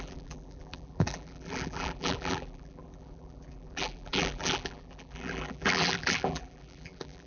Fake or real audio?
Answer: fake